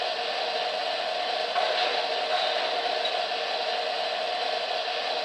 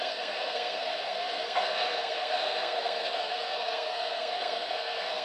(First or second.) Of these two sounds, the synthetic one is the second